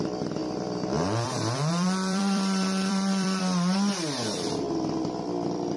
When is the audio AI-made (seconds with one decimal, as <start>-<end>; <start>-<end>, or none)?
0.4-3.4